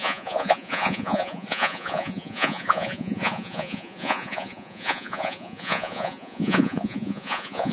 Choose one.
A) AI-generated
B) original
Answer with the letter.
A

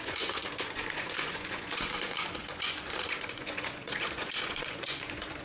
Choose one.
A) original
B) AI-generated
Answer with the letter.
B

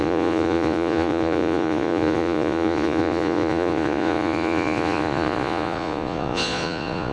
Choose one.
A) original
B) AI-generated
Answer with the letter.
B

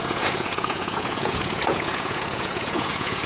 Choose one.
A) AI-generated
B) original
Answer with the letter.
A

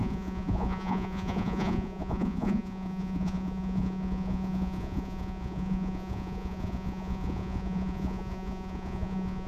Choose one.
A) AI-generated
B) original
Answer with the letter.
A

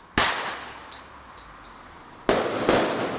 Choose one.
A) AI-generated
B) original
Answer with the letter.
B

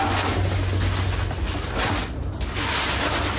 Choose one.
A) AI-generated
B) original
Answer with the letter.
B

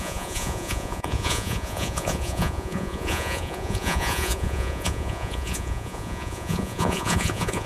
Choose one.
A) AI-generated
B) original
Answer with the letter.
A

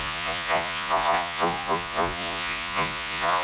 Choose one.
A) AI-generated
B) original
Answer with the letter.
A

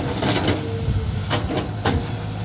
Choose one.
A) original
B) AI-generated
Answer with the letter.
A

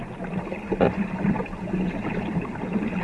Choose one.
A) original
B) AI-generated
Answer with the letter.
A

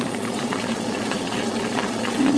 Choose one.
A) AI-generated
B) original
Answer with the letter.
A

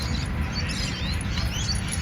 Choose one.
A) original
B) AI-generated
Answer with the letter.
A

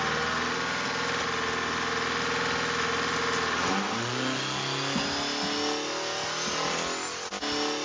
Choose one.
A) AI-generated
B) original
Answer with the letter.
B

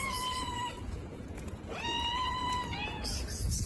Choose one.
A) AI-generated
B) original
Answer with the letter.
A